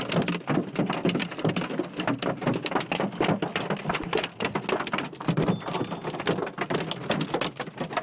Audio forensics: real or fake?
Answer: real